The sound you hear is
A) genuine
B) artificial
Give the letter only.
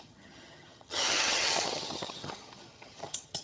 B